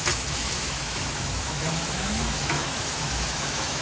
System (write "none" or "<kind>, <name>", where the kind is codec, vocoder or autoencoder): autoencoder, DAC-VAE